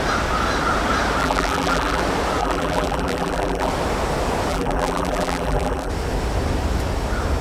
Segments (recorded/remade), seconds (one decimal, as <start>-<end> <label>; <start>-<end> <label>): 0.0-1.2 recorded; 1.2-2.0 remade; 2.0-2.4 recorded; 2.4-3.7 remade; 3.7-4.5 recorded; 4.5-5.9 remade; 5.9-7.4 recorded